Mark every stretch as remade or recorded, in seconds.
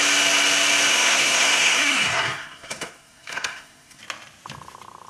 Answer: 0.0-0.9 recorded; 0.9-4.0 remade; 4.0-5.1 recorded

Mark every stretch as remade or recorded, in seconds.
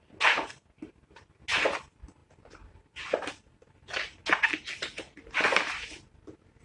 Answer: 0.0-6.6 recorded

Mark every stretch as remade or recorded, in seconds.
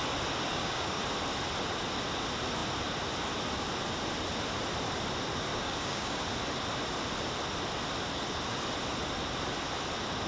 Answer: 0.0-0.5 recorded; 0.5-1.0 remade; 1.0-5.5 recorded; 5.5-6.2 remade; 6.2-10.3 recorded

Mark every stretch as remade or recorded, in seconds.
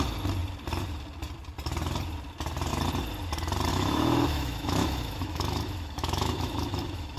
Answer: 0.0-3.7 recorded; 3.7-7.2 remade